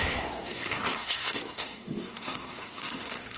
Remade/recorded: remade